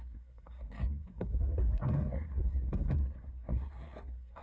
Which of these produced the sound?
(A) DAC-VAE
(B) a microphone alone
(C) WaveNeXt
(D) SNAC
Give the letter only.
D